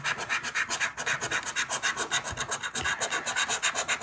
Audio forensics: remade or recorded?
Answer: recorded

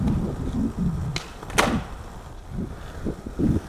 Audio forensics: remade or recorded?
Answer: recorded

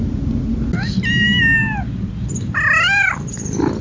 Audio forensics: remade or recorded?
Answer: recorded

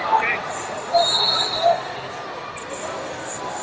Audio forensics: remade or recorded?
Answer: recorded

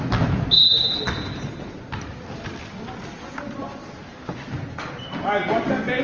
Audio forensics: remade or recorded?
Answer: recorded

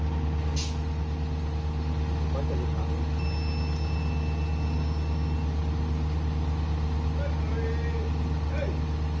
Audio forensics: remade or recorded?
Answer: recorded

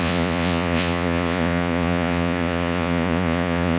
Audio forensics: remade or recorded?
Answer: remade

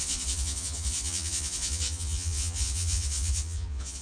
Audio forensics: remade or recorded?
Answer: remade